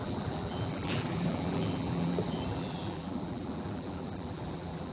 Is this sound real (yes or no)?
no